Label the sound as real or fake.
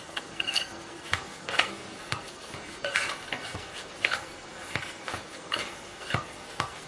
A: fake